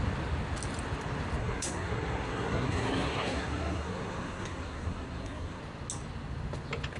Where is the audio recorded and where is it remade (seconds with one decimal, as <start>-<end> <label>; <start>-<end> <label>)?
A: 0.0-1.4 recorded; 1.4-5.6 remade; 5.6-7.0 recorded